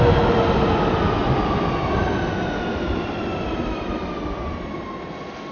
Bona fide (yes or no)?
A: yes